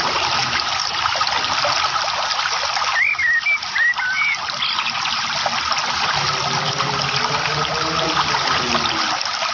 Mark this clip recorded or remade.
recorded